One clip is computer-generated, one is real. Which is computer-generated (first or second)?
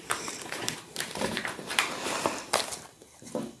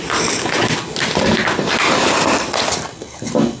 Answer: first